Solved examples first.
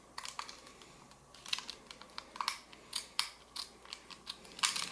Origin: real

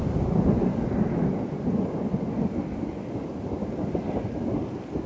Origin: real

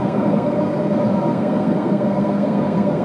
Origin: fake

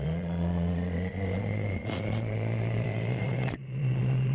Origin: fake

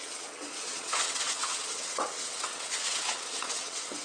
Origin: fake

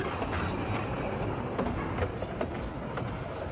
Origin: real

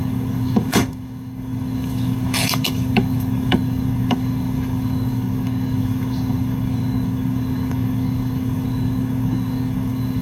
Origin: fake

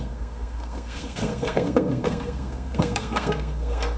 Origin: fake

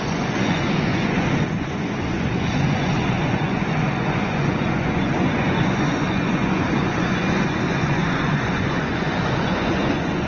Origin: fake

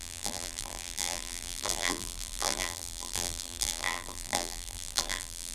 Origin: fake